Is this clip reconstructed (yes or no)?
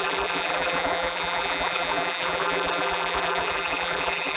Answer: yes